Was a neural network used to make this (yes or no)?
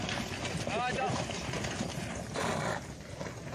no